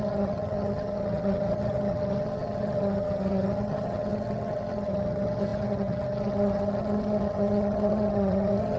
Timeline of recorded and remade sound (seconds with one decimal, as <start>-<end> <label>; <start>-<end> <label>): 0.0-8.8 remade